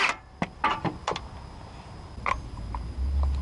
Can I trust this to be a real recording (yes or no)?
yes